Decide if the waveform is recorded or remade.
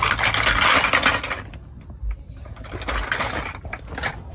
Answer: recorded